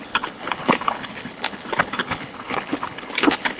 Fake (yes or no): yes